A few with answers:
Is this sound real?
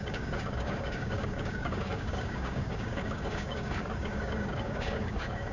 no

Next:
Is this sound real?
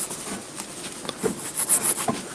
yes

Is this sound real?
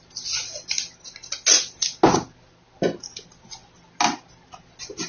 yes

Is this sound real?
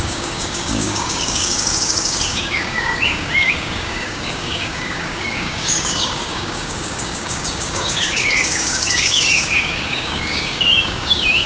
no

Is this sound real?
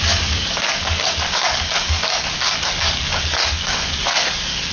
no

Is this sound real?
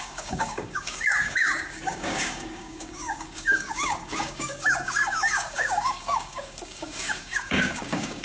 no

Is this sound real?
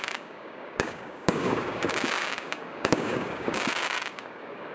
no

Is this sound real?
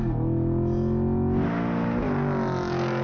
yes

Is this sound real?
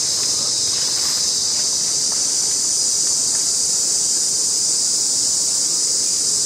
yes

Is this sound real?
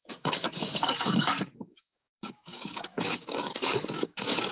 no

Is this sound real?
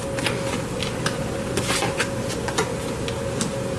yes